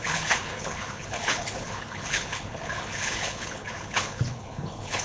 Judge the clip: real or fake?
fake